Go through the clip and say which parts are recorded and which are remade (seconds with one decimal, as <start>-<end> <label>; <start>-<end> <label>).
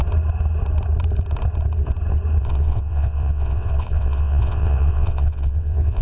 0.0-2.4 recorded; 2.4-6.0 remade